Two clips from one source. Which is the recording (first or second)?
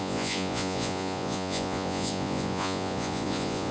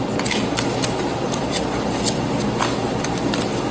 second